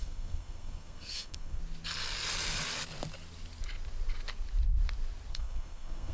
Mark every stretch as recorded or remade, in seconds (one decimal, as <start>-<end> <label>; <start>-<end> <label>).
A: 0.0-1.6 remade; 1.6-5.3 recorded; 5.3-6.1 remade